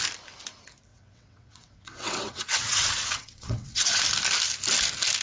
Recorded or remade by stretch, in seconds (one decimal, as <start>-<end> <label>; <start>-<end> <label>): 0.0-0.9 recorded; 0.9-4.0 remade; 4.0-5.2 recorded